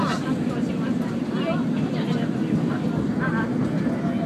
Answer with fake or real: real